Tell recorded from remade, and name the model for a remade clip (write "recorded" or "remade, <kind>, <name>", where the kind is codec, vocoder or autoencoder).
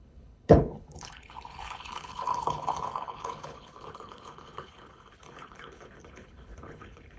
remade, codec, HILCodec